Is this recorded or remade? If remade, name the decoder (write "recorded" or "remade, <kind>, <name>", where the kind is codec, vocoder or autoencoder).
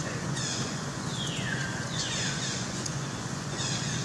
remade, vocoder, Vocos